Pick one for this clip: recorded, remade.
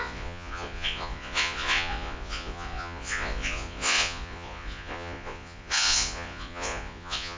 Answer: remade